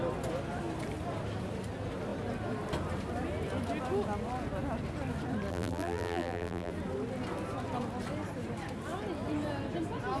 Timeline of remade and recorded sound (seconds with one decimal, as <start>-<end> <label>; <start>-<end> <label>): 0.0-5.5 recorded; 5.5-6.7 remade; 6.7-10.2 recorded